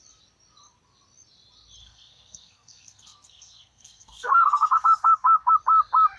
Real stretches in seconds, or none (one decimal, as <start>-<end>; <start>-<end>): 0.0-1.8; 5.5-6.2